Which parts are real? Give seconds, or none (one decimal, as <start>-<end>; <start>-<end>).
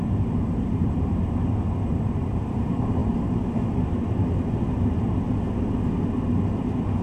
3.0-6.5